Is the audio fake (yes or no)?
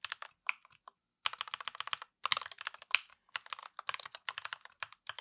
no